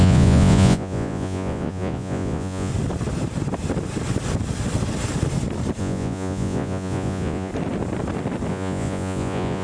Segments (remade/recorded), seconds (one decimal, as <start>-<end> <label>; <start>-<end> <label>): 0.0-2.7 remade; 2.7-5.8 recorded; 5.8-7.5 remade; 7.5-8.5 recorded; 8.5-9.6 remade